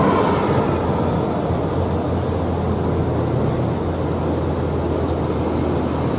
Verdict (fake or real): real